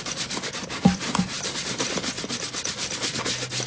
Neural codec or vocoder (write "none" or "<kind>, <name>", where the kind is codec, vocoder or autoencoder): none